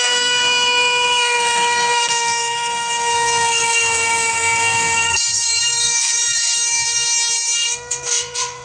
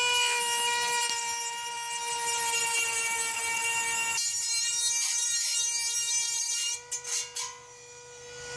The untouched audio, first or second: second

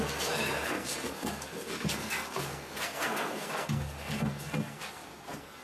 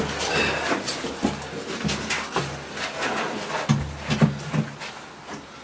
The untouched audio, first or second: second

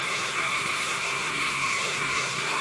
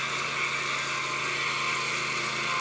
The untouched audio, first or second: second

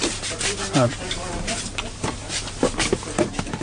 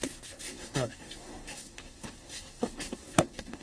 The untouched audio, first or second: first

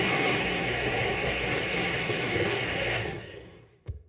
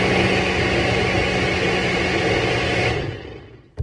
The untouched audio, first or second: second